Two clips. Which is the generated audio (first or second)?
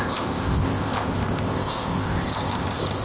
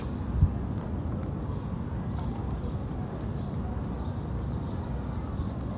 first